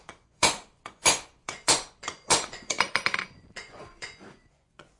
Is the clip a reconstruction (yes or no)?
yes